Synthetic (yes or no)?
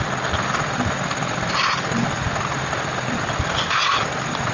yes